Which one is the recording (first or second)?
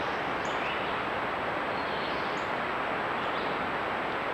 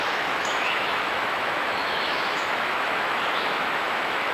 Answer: first